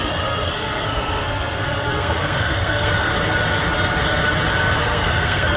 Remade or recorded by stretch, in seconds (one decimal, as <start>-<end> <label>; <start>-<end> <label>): 0.0-3.1 remade; 3.1-4.8 recorded; 4.8-5.6 remade

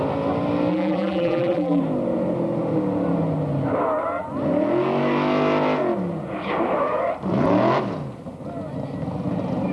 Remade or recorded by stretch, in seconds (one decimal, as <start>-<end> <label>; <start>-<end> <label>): 0.0-0.7 recorded; 0.7-1.8 remade; 1.8-9.7 recorded

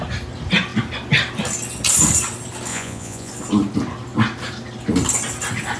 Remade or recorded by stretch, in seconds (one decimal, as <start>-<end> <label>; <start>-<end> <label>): 0.0-2.7 recorded; 2.7-3.3 remade; 3.3-5.8 recorded

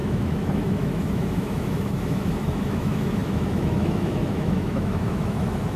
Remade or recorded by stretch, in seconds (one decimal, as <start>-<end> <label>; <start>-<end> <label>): 0.0-5.8 remade